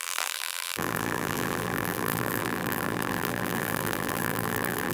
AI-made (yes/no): yes